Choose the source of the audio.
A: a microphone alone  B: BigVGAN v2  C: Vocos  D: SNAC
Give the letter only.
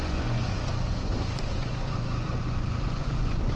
C